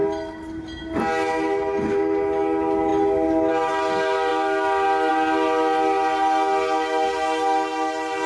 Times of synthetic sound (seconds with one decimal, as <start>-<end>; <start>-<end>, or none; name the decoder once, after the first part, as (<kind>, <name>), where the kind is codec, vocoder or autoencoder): none